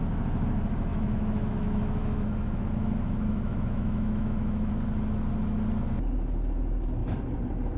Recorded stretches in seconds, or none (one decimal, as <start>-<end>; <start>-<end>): 0.0-0.9; 4.7-7.8